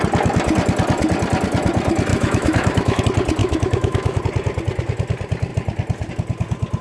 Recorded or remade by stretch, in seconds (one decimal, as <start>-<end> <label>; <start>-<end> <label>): 0.0-2.1 recorded; 2.1-3.0 remade; 3.0-3.4 recorded; 3.4-4.2 remade; 4.2-6.8 recorded